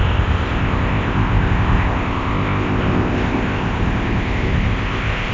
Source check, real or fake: fake